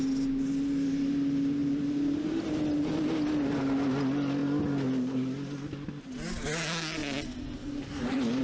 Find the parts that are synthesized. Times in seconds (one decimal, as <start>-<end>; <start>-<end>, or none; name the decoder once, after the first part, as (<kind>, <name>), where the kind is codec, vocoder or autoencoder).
7.0-8.4 (vocoder, BigVGAN v2)

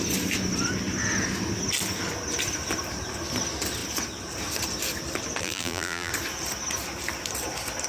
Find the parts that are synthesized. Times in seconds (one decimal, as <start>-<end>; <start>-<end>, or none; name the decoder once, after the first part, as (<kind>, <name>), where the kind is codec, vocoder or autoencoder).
5.4-6.1 (vocoder, BigVGAN v2)

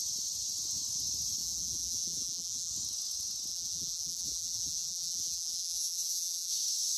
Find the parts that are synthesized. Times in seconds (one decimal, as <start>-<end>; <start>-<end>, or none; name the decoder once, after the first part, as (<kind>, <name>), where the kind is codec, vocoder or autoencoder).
1.4-2.7 (vocoder, BigVGAN v2); 3.5-6.5

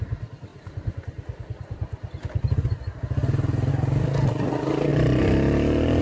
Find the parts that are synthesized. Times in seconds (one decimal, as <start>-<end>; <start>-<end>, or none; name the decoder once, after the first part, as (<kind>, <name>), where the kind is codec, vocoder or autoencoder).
none

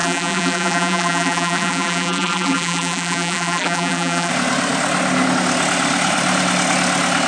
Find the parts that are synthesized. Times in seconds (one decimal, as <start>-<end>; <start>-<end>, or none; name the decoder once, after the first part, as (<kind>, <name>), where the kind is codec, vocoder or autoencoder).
0.0-4.3 (vocoder, BigVGAN v2)